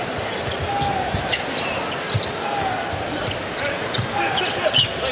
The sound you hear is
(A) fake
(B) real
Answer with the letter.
B